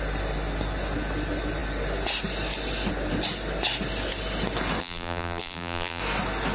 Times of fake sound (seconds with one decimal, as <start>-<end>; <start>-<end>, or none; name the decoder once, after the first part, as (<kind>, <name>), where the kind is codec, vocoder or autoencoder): 4.8-6.0 (vocoder, BigVGAN v2)